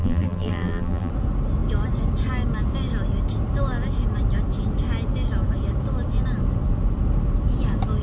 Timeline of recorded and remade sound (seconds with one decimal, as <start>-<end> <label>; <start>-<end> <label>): 0.0-1.1 remade; 1.1-8.0 recorded